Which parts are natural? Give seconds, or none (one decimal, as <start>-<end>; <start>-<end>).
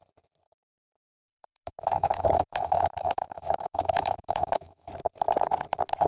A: 0.0-1.2; 4.9-6.1